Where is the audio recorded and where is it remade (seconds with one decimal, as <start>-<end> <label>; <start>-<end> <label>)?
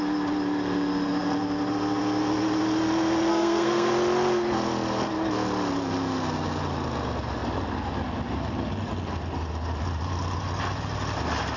0.0-3.3 recorded; 3.3-3.9 remade; 3.9-11.6 recorded